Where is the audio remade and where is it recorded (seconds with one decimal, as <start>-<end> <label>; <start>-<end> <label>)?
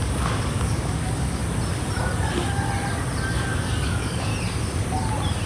0.0-1.4 remade; 1.4-3.3 recorded; 3.3-4.3 remade; 4.3-5.5 recorded